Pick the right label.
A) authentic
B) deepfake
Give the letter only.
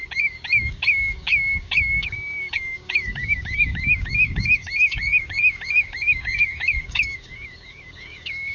B